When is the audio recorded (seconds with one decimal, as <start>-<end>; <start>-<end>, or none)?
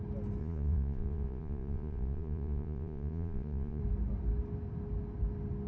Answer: 0.0-0.4; 3.8-5.7